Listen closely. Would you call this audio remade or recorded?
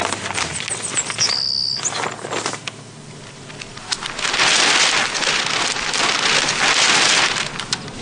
recorded